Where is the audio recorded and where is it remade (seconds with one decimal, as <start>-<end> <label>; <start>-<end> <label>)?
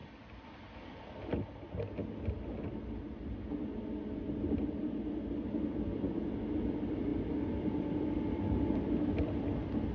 0.0-9.9 recorded